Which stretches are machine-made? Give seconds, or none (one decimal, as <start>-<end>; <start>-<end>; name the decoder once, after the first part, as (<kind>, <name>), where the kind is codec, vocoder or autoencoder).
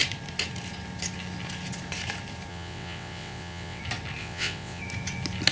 2.5-3.8 (vocoder, WaveNeXt); 4.2-4.8